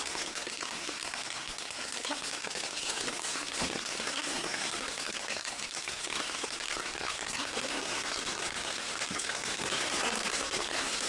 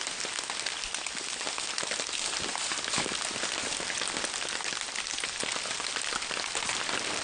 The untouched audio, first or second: second